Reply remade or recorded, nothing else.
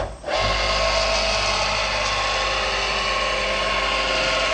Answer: recorded